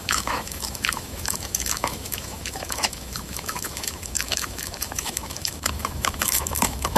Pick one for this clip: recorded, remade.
remade